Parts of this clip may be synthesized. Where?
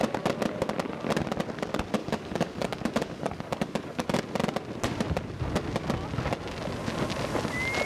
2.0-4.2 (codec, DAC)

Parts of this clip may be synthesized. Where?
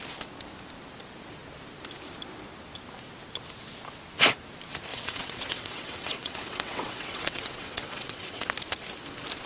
4.9-8.5 (vocoder, WaveNeXt)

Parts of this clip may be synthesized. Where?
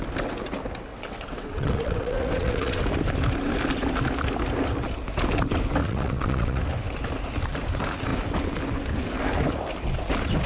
0.9-2.8 (vocoder, WaveNeXt); 5.8-6.6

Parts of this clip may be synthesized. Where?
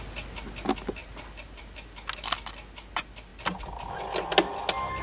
none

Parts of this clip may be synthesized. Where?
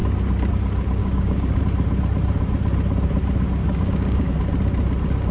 1.0-1.6 (codec, DAC); 3.6-4.3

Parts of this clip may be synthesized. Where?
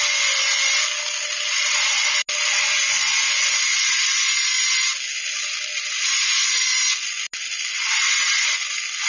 none